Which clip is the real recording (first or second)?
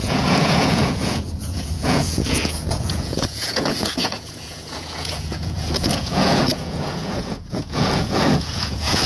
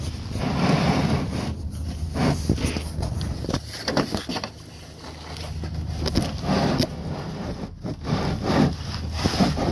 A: second